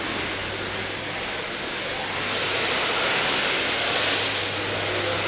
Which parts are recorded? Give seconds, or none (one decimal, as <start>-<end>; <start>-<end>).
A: 0.0-5.3